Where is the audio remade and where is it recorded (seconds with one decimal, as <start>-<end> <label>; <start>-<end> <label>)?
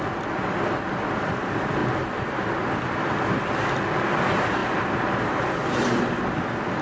0.0-6.8 recorded